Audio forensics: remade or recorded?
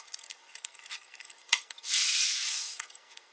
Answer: remade